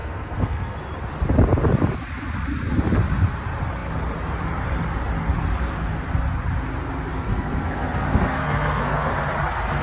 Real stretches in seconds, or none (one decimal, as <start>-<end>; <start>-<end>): 0.8-7.2; 9.1-9.8